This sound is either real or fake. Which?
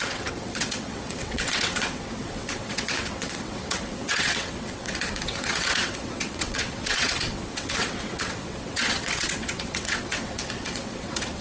fake